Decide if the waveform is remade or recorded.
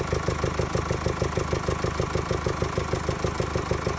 recorded